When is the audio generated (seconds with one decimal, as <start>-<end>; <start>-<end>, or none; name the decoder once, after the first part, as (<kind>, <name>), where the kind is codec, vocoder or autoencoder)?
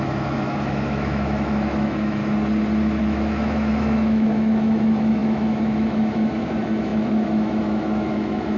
0.0-2.2 (autoencoder, DAC-VAE); 3.0-8.6